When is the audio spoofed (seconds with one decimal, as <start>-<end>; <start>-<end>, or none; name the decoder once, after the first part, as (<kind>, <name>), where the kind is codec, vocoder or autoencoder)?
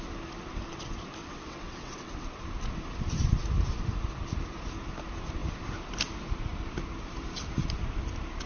1.2-2.4 (vocoder, WaveNeXt)